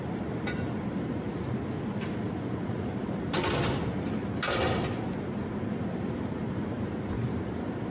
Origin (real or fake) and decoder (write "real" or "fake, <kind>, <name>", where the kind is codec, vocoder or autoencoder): real